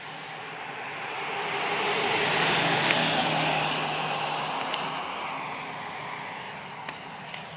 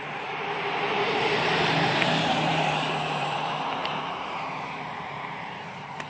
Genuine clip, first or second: first